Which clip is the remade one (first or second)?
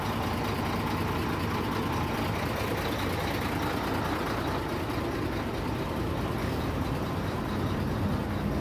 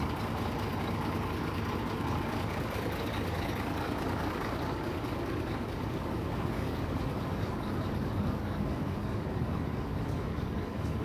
second